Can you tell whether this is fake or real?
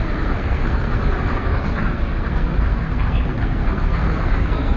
fake